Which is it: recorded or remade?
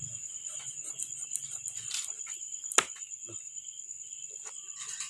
recorded